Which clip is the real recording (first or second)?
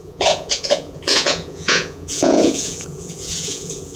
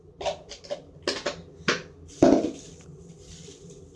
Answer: second